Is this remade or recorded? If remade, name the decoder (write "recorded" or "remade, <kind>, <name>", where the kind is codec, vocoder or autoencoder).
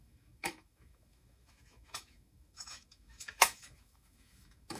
remade, autoencoder, DAC-VAE